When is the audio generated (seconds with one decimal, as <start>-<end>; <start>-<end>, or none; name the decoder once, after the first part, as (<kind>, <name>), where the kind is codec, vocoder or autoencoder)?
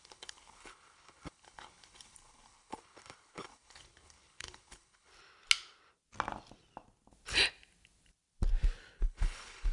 0.0-5.1 (codec, HILCodec); 9.0-9.7